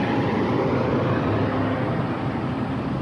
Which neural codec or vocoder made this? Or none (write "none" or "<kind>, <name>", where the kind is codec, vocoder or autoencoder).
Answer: none